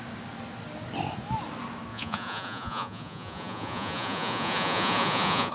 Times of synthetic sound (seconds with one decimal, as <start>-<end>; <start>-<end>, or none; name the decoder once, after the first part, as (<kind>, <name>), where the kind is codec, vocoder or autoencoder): 1.9-5.5 (vocoder, Vocos)